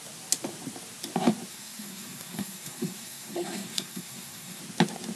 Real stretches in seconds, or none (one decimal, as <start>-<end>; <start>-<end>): 0.0-1.5; 4.6-5.2